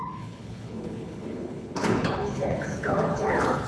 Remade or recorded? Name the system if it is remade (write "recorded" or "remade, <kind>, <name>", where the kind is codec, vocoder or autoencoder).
remade, codec, HILCodec